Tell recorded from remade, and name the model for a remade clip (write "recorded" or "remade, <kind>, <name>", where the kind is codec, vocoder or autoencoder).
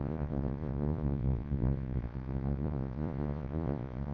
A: remade, vocoder, Vocos